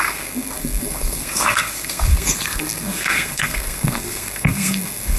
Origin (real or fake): fake